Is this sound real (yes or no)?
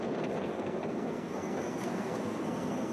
no